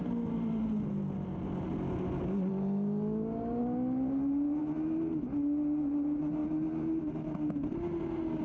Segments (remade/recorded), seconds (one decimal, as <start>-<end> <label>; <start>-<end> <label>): 0.0-8.4 recorded